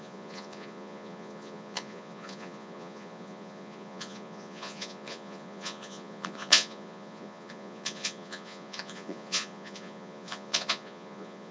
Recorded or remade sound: remade